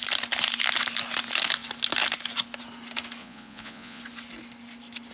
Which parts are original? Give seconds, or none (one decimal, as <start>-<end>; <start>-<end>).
0.0-3.2; 4.0-5.1